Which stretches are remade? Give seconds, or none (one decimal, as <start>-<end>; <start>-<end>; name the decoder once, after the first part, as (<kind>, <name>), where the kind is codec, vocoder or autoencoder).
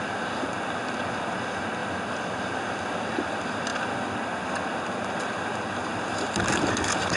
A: none